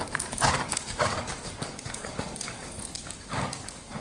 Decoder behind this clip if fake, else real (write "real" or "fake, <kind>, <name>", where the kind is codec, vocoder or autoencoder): fake, codec, DAC